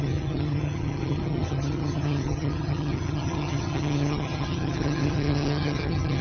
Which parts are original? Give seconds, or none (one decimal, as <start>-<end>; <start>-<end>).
none